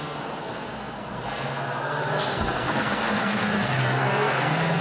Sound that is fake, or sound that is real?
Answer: fake